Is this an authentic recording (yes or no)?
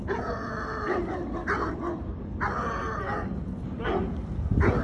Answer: yes